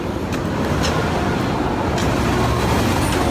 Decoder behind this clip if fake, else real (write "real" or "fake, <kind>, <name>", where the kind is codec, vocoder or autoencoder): real